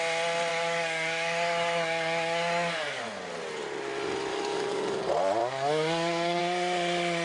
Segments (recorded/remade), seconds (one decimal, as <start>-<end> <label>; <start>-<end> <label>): 0.0-0.5 recorded; 0.5-3.0 remade; 3.0-4.3 recorded; 4.3-5.0 remade; 5.0-5.4 recorded; 5.4-6.4 remade; 6.4-7.2 recorded

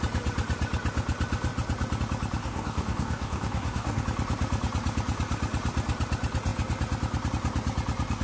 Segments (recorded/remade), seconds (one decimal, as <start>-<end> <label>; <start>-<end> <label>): 0.0-2.4 recorded; 2.4-4.0 remade; 4.0-8.2 recorded

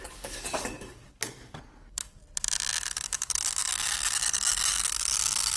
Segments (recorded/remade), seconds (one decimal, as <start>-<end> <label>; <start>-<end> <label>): 0.0-2.2 remade; 2.2-2.8 recorded; 2.8-5.6 remade

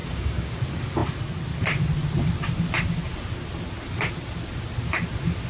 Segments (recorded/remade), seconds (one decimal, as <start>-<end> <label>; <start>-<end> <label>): 0.0-0.6 remade; 0.6-5.5 recorded

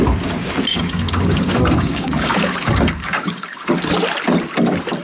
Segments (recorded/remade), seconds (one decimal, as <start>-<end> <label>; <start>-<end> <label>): 0.0-0.7 recorded; 0.7-3.7 remade; 3.7-5.0 recorded

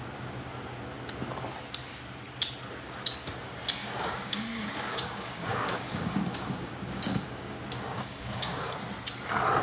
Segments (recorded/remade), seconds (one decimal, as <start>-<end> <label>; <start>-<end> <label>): 0.0-3.8 recorded; 3.8-8.7 remade; 8.7-9.6 recorded